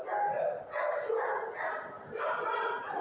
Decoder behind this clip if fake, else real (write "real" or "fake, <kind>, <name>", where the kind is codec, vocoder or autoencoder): real